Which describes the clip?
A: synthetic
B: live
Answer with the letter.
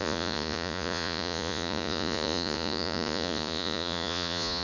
A